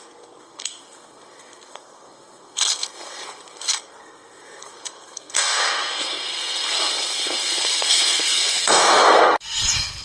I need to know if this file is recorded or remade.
remade